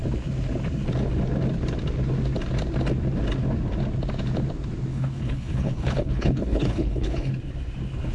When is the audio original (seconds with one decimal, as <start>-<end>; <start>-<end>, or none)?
0.0-4.9; 7.3-8.1